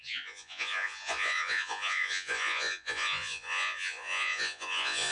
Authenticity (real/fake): fake